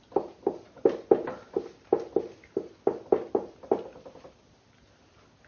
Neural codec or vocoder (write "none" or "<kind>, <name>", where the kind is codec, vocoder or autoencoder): none